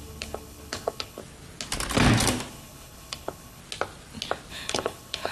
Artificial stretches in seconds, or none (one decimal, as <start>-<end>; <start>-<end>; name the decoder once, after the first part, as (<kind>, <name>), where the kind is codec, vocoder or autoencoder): 0.0-1.2 (codec, HILCodec); 2.5-3.6; 4.5-5.3